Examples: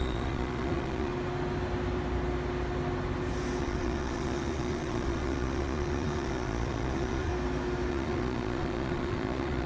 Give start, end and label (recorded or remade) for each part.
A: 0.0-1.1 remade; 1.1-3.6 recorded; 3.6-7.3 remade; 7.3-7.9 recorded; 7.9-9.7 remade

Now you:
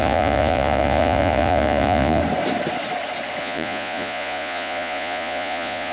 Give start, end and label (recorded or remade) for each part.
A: 0.0-2.2 remade; 2.2-3.4 recorded; 3.4-5.9 remade

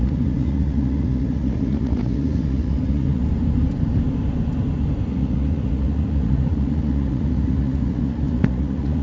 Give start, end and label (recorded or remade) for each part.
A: 0.0-3.2 remade; 3.2-5.1 recorded; 5.1-9.0 remade

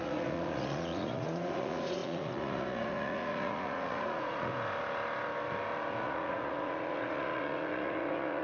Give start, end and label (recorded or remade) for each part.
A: 0.0-4.5 remade; 4.5-6.0 recorded; 6.0-8.4 remade

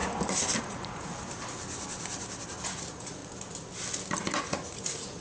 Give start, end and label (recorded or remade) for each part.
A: 0.0-0.6 recorded; 0.6-1.1 remade; 1.1-2.5 recorded; 2.5-3.2 remade; 3.2-4.4 recorded; 4.4-5.2 remade